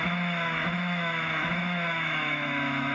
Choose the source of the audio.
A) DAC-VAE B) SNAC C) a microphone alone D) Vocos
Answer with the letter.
A